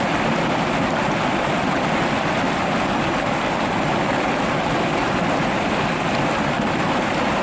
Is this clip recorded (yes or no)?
yes